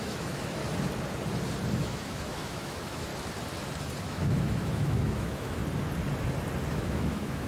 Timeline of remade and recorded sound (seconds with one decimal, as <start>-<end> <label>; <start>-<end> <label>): 0.0-0.6 remade; 0.6-1.7 recorded; 1.7-3.1 remade; 3.1-4.0 recorded; 4.0-5.6 remade; 5.6-6.7 recorded; 6.7-7.5 remade